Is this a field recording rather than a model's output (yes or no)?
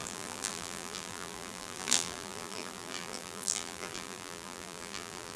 no